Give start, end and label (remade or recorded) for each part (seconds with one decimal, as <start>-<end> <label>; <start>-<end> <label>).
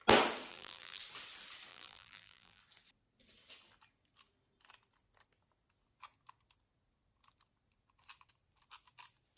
0.0-0.5 recorded; 0.5-1.0 remade; 1.0-1.7 recorded; 1.7-2.6 remade; 2.6-9.4 recorded